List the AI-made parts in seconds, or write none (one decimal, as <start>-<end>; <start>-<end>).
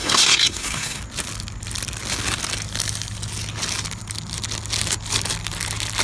0.0-1.0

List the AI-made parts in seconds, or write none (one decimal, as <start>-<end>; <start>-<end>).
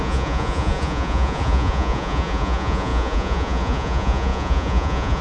0.0-5.2